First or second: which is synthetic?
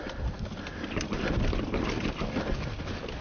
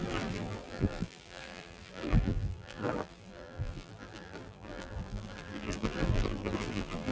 second